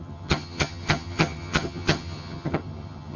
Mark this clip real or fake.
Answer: fake